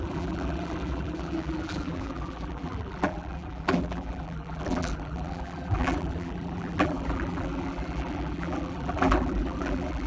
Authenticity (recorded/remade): remade